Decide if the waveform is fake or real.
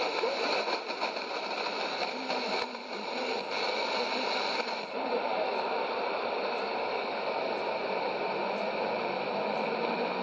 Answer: real